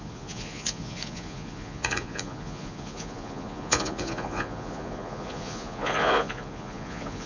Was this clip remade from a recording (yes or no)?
yes